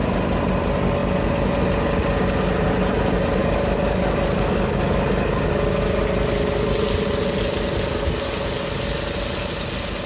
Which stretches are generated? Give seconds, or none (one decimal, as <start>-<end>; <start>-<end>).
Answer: 3.4-5.5